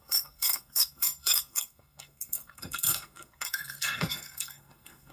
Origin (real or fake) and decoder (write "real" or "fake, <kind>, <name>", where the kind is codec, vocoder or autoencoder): fake, codec, SNAC